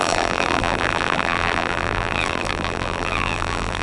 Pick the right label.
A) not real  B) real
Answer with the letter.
A